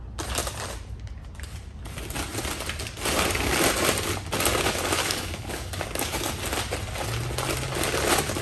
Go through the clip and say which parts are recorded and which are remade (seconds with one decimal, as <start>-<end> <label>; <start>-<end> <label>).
0.0-5.0 recorded; 5.0-6.3 remade; 6.3-8.4 recorded